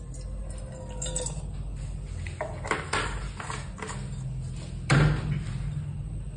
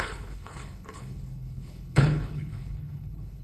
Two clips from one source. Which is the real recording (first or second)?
first